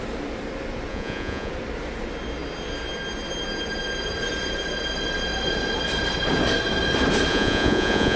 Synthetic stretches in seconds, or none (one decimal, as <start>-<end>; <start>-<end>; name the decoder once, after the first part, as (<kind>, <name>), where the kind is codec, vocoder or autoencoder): 0.9-1.5 (vocoder, Vocos); 7.3-8.2